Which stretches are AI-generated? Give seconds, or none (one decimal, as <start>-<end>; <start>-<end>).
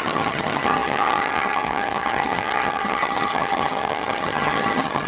0.0-5.1